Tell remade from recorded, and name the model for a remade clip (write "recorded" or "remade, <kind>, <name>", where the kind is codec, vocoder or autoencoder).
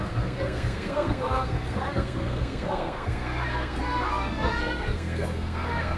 remade, codec, SNAC